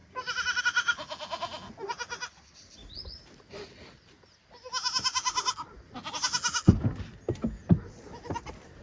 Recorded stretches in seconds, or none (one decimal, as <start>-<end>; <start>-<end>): 0.6-7.6